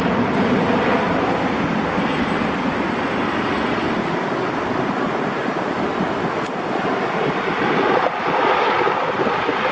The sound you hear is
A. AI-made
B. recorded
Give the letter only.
B